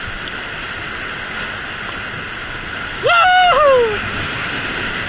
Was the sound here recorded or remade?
recorded